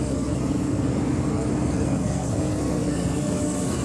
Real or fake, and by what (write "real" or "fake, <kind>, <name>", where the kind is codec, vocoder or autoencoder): fake, codec, SNAC